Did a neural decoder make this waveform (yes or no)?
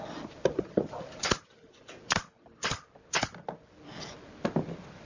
no